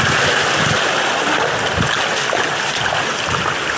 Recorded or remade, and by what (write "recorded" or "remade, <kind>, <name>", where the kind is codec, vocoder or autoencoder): recorded